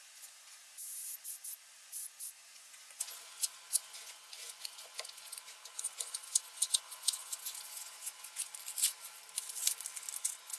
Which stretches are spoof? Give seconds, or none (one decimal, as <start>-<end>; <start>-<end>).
0.0-8.5; 10.2-10.6

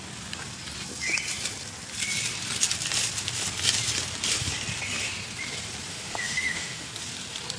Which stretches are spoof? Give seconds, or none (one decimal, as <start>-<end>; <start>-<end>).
5.9-6.9

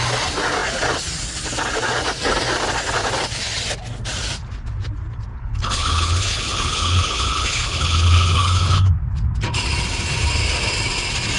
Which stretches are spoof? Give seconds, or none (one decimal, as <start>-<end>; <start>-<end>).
5.3-8.9

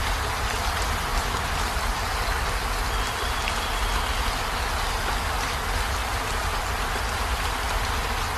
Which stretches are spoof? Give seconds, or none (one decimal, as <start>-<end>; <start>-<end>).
1.1-3.6

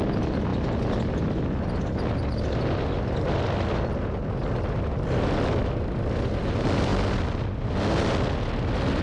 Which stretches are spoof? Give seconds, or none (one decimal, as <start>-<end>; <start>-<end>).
none